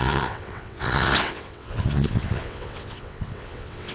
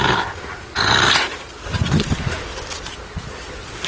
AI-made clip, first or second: first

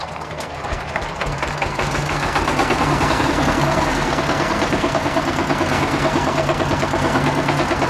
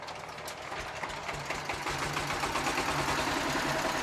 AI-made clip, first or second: first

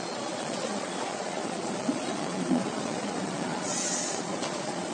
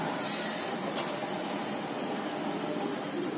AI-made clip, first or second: first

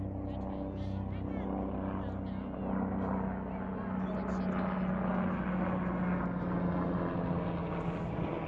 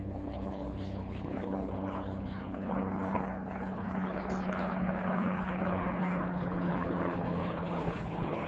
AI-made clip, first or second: second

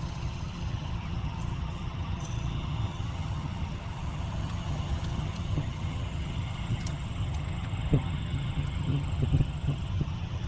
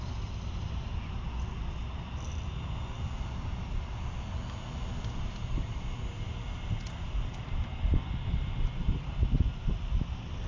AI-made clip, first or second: first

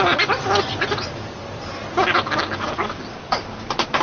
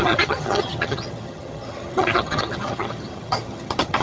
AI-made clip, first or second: second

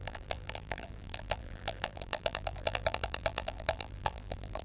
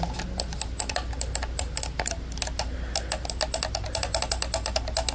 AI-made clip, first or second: first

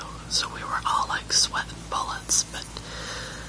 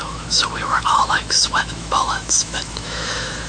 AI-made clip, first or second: second